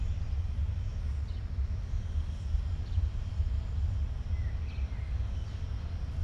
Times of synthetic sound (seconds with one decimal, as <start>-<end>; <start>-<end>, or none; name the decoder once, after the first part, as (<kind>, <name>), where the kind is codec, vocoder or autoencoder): none